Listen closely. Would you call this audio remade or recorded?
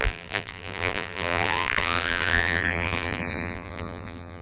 remade